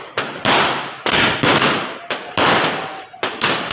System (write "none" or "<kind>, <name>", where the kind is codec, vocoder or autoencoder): none